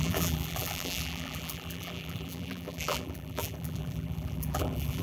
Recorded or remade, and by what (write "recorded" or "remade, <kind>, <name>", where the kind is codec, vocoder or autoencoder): remade, vocoder, BigVGAN v2